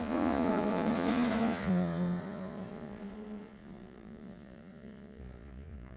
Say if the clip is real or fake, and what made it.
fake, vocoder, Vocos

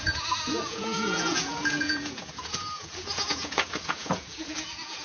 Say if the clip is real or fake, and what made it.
fake, vocoder, Vocos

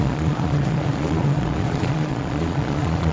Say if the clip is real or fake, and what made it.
fake, vocoder, Vocos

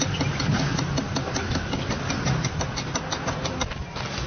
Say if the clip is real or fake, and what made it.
real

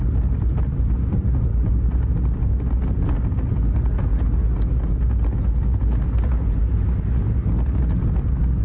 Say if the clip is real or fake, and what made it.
real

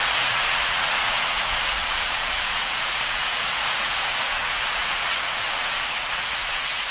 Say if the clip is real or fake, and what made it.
fake, vocoder, Vocos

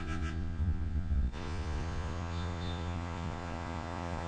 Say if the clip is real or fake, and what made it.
fake, vocoder, Vocos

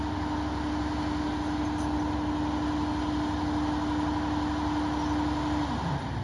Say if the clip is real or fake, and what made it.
real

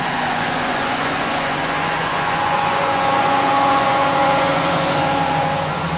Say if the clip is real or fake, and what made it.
fake, vocoder, Vocos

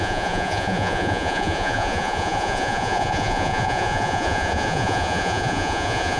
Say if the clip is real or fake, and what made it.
fake, vocoder, Vocos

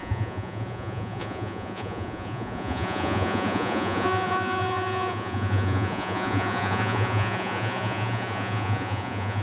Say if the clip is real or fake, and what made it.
fake, vocoder, Vocos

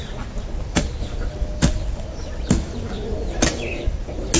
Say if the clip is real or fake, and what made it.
real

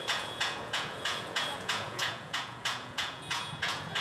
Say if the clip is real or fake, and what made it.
fake, vocoder, Vocos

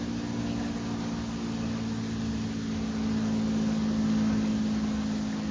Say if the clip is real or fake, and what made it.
real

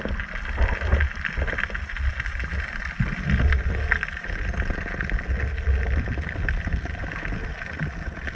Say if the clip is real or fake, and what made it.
real